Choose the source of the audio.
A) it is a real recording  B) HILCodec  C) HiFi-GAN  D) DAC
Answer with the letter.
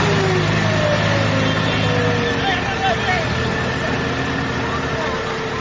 A